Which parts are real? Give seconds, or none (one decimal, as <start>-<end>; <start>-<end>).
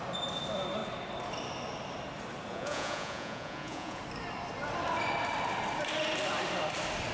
0.0-2.5; 4.0-7.1